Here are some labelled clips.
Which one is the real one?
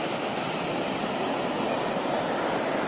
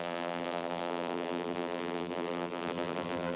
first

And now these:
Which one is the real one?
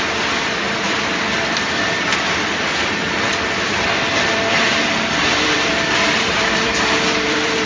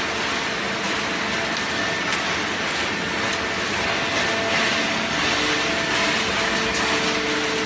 second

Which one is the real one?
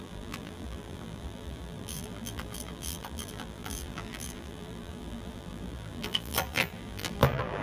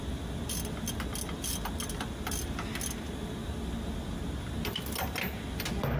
second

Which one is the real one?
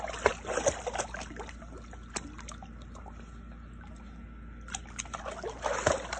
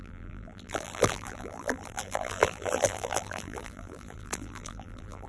first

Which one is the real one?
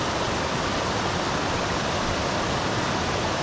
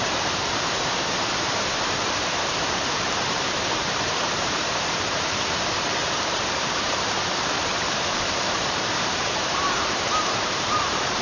first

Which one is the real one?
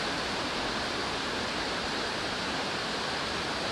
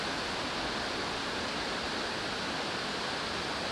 second